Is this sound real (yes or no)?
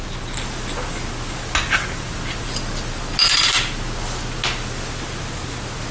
yes